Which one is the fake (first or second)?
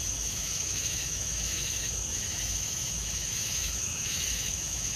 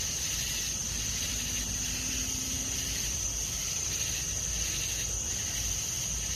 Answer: first